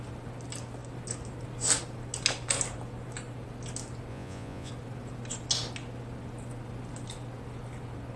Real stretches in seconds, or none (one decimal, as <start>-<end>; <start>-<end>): 0.0-4.1; 4.7-8.2